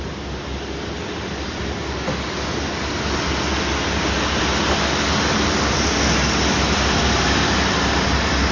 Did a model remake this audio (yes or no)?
no